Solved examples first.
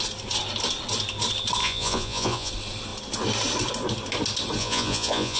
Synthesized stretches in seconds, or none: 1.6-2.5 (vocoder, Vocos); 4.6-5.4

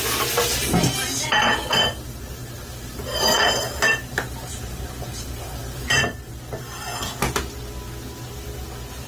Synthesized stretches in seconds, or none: 2.4-6.3 (vocoder, BigVGAN v2)

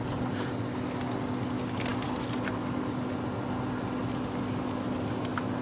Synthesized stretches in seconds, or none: none

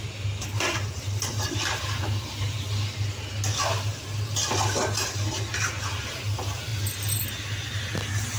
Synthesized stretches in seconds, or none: none

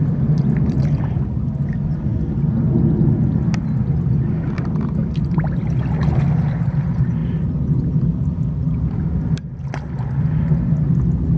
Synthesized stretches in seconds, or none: none